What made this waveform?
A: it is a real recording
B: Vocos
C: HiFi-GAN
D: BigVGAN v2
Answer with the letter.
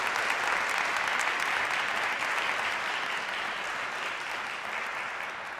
A